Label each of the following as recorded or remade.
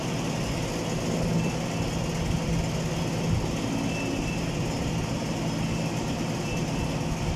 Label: recorded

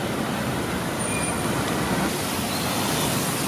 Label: recorded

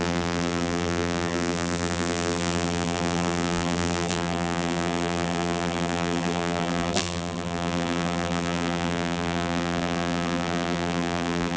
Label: remade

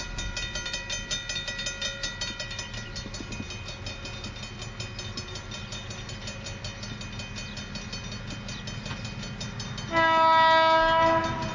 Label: recorded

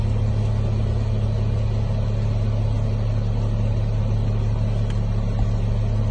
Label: recorded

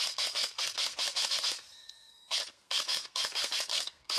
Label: remade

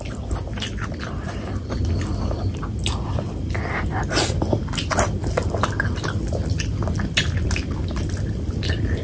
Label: recorded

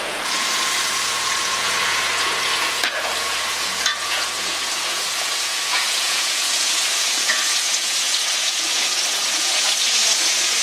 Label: remade